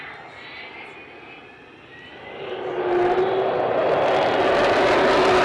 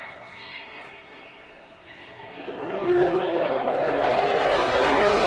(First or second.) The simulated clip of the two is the second